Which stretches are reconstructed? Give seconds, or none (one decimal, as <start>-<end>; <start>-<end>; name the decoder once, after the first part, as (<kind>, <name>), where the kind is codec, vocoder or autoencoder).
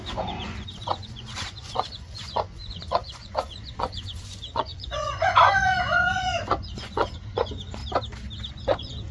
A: 0.0-7.8 (vocoder, Vocos); 8.5-9.1